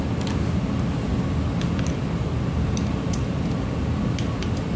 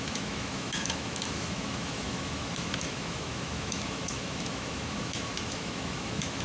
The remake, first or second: second